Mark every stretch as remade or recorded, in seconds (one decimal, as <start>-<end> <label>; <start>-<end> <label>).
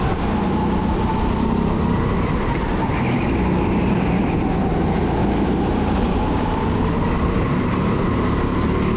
0.0-5.2 recorded; 5.2-7.6 remade; 7.6-9.0 recorded